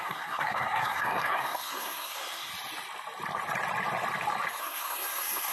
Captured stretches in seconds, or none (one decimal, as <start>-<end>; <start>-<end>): 2.5-4.6